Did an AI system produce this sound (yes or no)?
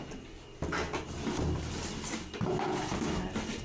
no